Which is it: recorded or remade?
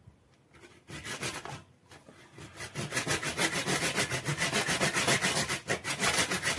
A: recorded